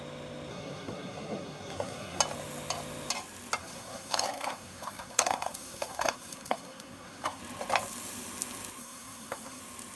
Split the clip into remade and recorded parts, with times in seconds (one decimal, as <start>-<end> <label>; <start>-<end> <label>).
0.0-0.5 recorded; 0.5-2.2 remade; 2.2-3.6 recorded; 3.6-7.4 remade; 7.4-8.8 recorded; 8.8-9.6 remade; 9.6-10.0 recorded